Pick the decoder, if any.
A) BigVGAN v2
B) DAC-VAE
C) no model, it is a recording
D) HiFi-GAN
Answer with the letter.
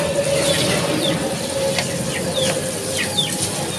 C